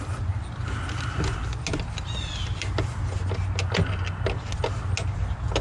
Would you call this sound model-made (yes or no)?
no